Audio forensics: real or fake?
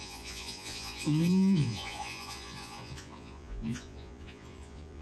fake